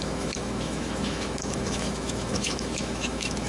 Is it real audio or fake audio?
fake